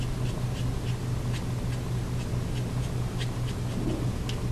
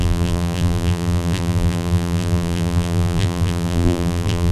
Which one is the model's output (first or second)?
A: second